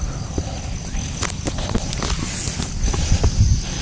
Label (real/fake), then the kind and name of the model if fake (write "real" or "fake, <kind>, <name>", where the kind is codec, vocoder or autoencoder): real